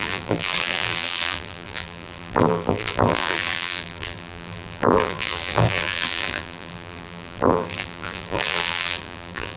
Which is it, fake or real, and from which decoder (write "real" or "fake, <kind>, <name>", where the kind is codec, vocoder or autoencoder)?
fake, vocoder, BigVGAN v2